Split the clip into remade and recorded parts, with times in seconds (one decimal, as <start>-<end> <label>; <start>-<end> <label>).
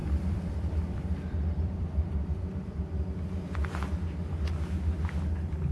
0.0-2.8 remade; 2.8-5.7 recorded